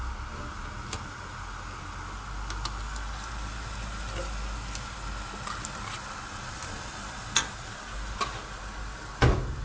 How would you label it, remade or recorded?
recorded